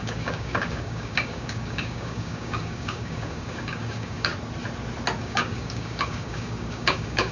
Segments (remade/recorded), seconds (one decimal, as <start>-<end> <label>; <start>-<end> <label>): 0.0-4.3 remade; 4.3-5.2 recorded; 5.2-7.3 remade